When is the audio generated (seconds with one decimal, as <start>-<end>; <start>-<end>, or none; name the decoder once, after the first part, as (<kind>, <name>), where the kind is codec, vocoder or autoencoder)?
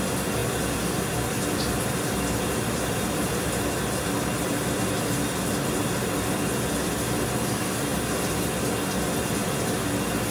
0.4-3.5 (vocoder, BigVGAN v2)